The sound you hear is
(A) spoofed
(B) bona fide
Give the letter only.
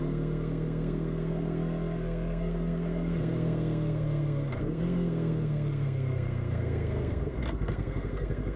A